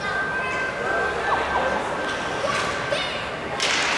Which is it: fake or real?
real